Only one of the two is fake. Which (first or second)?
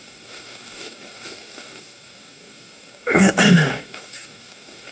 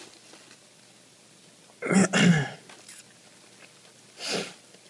first